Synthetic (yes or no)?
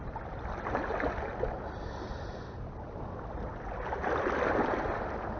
no